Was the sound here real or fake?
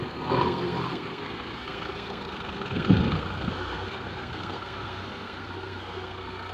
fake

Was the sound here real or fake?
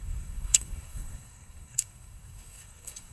fake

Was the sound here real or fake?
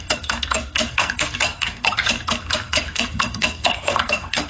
fake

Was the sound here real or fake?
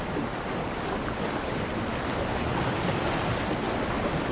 real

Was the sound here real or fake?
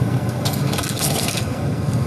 fake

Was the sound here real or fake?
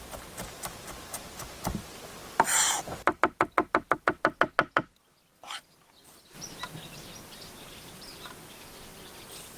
real